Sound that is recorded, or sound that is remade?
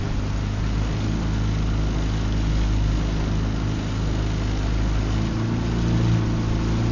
recorded